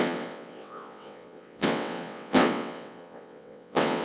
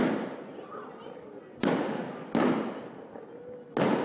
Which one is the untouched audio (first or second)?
second